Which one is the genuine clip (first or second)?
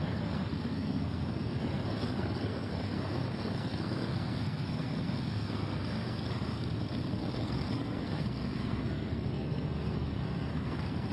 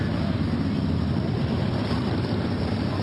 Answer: second